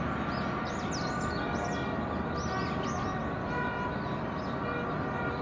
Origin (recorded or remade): recorded